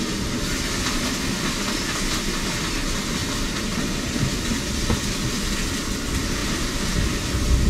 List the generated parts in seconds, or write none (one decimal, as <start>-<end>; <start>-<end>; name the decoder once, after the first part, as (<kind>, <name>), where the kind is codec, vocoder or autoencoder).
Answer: 3.2-5.2 (vocoder, BigVGAN v2); 6.4-7.7